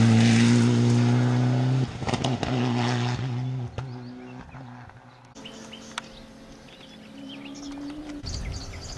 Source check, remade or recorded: recorded